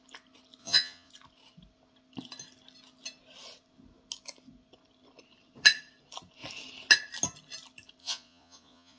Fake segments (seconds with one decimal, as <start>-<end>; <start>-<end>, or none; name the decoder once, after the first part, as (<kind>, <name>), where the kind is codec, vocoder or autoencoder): 0.6-1.1 (vocoder, Vocos); 8.0-9.0